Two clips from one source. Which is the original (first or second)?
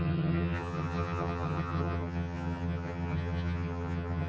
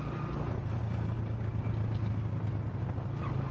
second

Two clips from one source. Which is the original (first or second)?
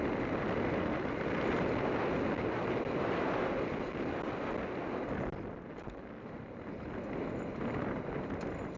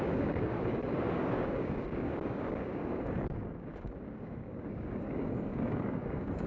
first